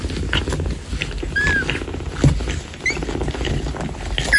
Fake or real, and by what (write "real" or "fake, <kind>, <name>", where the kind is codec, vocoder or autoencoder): real